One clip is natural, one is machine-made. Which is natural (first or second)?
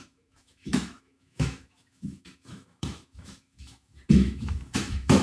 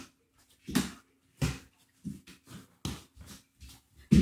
second